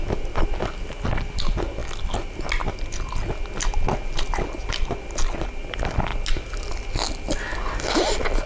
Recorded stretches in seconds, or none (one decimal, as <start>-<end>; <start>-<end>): 0.0-8.5